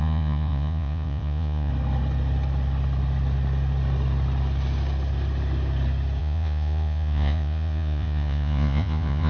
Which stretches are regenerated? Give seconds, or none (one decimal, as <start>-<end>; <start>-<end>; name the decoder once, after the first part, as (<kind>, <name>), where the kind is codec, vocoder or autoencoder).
0.0-1.7 (vocoder, Vocos); 6.2-9.3